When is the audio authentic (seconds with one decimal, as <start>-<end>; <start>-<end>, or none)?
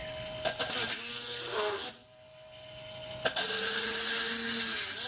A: 1.0-2.0; 3.1-5.1